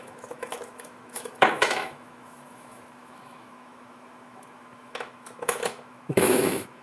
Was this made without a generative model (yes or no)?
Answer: no